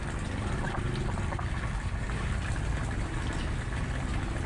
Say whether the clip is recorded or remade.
recorded